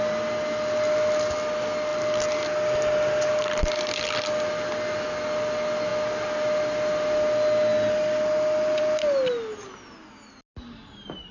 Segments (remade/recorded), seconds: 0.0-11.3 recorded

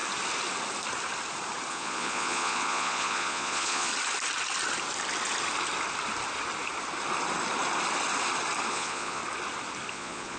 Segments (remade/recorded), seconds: 0.0-1.7 recorded; 1.7-3.9 remade; 3.9-8.7 recorded; 8.7-9.2 remade; 9.2-9.9 recorded; 9.9-10.4 remade

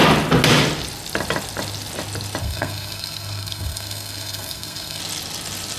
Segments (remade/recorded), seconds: 0.0-2.4 recorded; 2.4-5.0 remade; 5.0-5.8 recorded

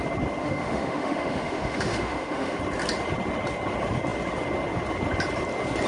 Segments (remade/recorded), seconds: 0.0-0.4 recorded; 0.4-2.6 remade; 2.6-5.9 recorded

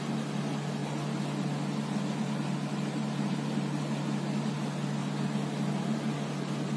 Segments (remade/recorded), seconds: 0.0-6.8 recorded